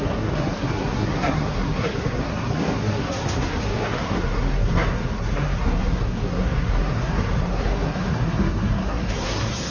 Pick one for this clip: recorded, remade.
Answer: remade